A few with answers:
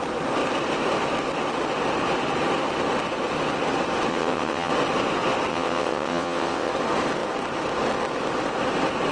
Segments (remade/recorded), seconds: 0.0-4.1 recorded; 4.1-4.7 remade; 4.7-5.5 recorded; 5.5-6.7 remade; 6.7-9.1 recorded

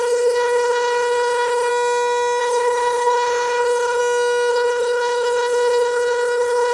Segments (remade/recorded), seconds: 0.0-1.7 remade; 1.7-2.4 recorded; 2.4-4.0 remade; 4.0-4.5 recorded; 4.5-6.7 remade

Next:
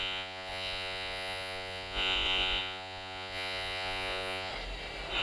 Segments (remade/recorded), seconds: 0.0-4.5 remade; 4.5-5.2 recorded

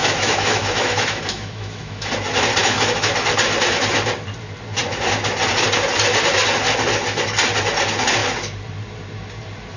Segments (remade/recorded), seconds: 0.0-2.1 remade; 2.1-2.6 recorded; 2.6-3.1 remade; 3.1-9.8 recorded